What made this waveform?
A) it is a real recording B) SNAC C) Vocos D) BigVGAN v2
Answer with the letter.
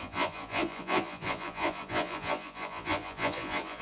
C